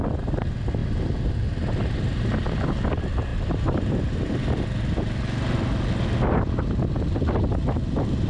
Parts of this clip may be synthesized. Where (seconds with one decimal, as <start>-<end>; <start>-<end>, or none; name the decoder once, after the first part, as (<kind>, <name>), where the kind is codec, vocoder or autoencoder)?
0.8-1.7 (vocoder, BigVGAN v2); 3.3-4.6